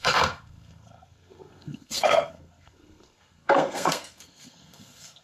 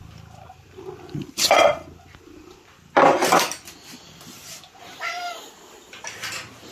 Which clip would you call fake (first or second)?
first